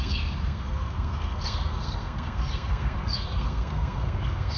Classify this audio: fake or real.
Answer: fake